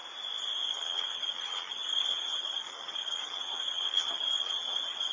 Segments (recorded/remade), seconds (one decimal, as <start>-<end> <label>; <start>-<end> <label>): 0.0-0.7 recorded; 0.7-5.1 remade